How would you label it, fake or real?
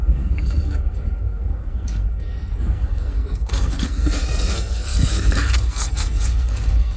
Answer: fake